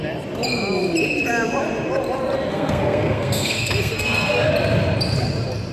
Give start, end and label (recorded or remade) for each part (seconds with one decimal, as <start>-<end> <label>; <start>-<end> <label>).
0.0-2.5 recorded; 2.5-4.5 remade; 4.5-5.7 recorded